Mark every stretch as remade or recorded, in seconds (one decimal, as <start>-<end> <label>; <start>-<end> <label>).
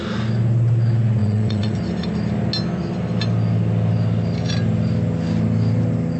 0.0-1.2 recorded; 1.2-1.8 remade; 1.8-6.2 recorded